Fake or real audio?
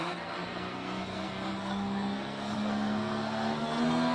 fake